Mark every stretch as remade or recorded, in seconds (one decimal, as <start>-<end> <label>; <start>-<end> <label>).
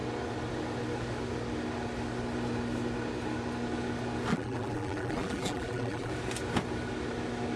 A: 0.0-4.3 recorded; 4.3-6.1 remade; 6.1-7.6 recorded